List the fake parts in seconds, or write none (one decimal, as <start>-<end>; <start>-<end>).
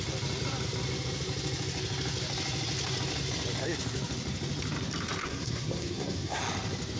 5.2-6.4